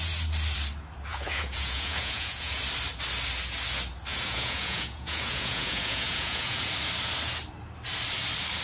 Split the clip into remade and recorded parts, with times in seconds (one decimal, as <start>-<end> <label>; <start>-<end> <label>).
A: 0.0-1.1 recorded; 1.1-2.6 remade; 2.6-4.1 recorded; 4.1-6.7 remade; 6.7-8.6 recorded